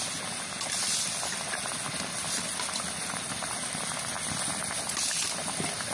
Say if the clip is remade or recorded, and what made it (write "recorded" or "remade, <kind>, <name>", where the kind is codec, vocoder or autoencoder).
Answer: recorded